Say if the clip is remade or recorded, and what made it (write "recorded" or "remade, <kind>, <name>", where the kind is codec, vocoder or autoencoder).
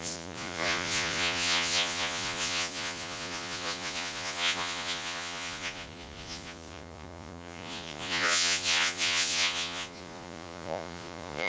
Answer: remade, vocoder, Vocos